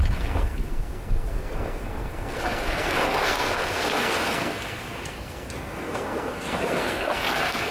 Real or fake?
fake